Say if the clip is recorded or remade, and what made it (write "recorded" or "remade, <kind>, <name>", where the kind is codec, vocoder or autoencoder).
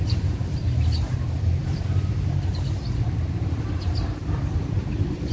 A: remade, vocoder, BigVGAN v2